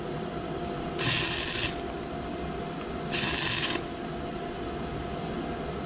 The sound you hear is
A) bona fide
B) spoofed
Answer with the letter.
A